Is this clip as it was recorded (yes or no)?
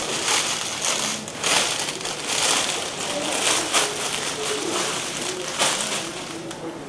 yes